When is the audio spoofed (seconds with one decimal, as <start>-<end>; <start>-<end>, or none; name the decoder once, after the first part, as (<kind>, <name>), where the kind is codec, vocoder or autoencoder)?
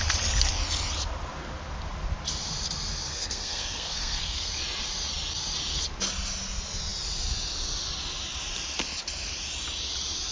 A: 3.1-4.5 (codec, SNAC)